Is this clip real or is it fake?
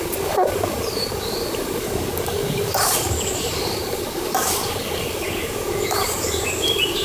fake